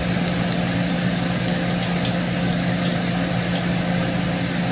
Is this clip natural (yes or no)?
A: yes